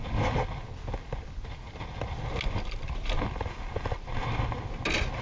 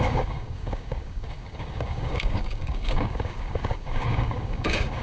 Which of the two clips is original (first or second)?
first